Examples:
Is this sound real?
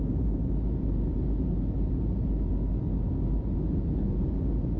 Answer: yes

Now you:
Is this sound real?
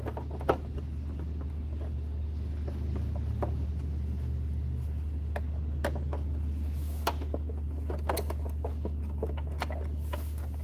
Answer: yes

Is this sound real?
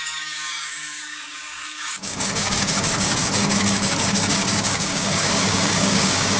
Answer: no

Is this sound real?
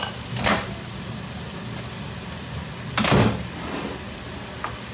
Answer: yes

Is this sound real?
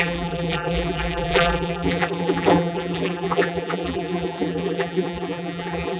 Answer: no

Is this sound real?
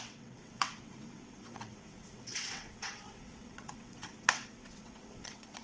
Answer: no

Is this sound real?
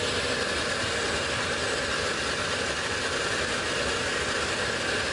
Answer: yes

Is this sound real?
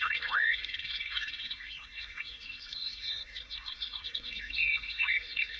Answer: no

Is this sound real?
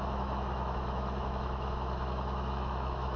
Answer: no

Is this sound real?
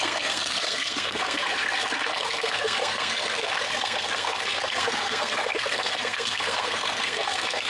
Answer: no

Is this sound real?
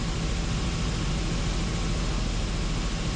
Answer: yes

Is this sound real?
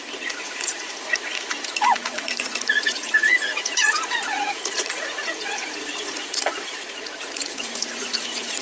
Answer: no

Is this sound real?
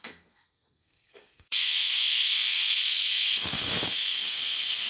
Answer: no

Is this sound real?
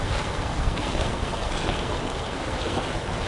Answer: no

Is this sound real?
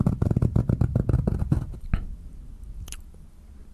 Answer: yes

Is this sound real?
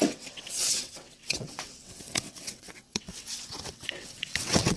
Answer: no